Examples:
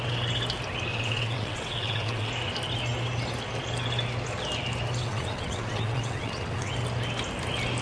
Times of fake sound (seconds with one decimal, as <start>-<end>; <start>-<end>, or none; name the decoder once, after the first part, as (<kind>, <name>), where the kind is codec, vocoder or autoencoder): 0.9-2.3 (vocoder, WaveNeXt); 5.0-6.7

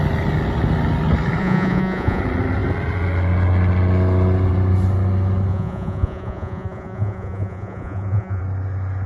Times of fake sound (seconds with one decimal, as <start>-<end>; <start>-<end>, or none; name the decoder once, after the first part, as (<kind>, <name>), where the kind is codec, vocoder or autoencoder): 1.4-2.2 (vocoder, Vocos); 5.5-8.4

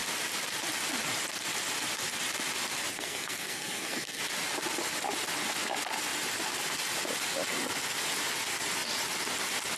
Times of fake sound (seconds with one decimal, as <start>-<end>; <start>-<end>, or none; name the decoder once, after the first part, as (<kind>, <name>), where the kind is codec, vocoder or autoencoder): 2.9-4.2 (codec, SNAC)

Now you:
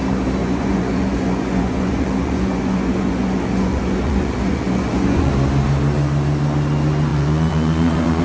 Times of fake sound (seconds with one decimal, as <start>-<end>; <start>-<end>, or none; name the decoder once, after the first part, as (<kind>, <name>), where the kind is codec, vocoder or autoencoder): 0.4-5.3 (vocoder, Vocos); 7.1-8.2

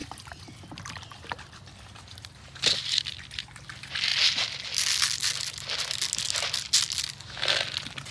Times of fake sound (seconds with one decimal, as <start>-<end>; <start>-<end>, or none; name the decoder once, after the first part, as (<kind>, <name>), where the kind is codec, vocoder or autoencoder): none